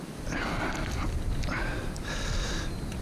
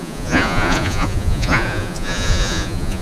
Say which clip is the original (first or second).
first